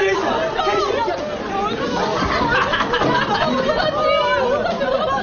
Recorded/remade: recorded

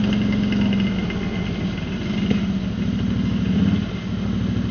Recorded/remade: recorded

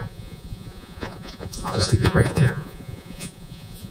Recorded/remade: remade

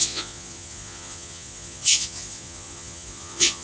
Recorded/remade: remade